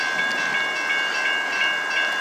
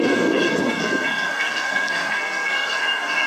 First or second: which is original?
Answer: first